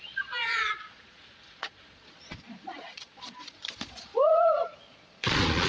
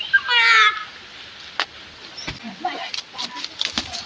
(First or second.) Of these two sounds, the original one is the second